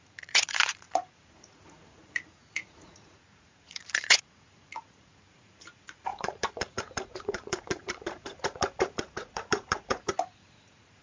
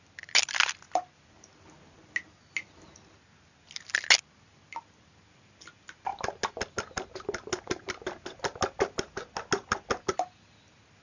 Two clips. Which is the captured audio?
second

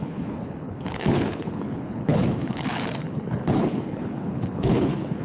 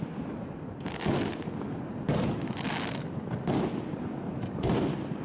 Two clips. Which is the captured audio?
second